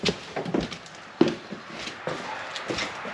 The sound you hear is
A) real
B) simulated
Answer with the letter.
A